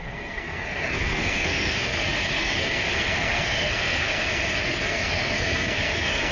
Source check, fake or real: fake